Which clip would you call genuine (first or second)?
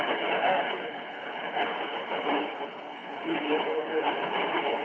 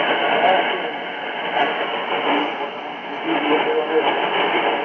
second